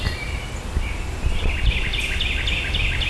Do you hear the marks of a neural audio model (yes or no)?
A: no